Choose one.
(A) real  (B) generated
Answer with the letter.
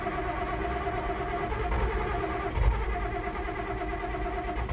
A